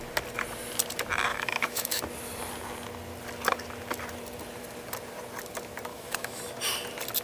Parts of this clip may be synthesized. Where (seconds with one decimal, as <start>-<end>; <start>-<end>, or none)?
1.3-2.0; 5.9-6.4